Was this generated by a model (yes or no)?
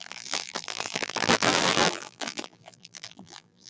yes